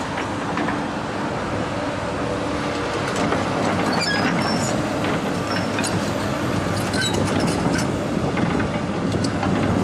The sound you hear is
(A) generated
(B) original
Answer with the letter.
B